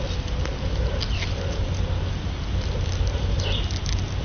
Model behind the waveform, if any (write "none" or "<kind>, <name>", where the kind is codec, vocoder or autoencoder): none